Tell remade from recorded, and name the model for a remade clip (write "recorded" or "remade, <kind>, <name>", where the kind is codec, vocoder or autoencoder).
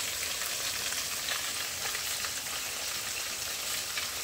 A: recorded